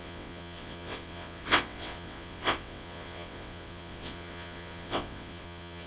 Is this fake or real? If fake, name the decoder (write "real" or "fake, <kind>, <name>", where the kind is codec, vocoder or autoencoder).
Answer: fake, vocoder, WaveNeXt